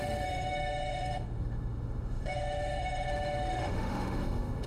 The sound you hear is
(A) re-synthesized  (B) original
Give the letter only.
A